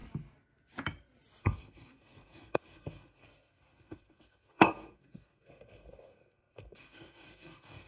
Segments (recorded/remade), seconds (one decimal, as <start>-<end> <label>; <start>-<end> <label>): 0.0-1.4 recorded; 1.4-7.9 remade